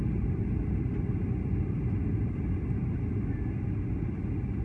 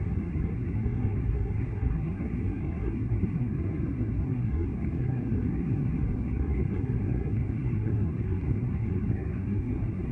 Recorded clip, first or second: first